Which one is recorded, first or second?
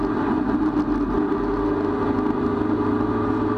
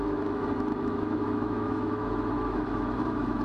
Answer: first